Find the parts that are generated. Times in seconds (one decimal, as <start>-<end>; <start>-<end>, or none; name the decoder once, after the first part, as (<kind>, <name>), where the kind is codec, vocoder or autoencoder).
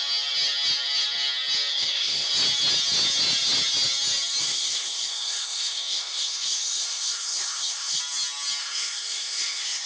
1.7-2.3 (codec, SNAC); 4.4-8.0; 8.6-9.9